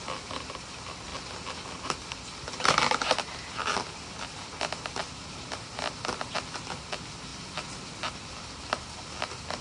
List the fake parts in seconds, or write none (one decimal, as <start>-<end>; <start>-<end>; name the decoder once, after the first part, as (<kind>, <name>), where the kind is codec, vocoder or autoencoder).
none